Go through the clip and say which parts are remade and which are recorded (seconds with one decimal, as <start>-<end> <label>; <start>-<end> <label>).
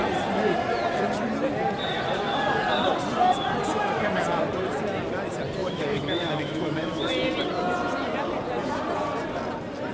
0.0-5.6 recorded; 5.6-7.0 remade; 7.0-9.9 recorded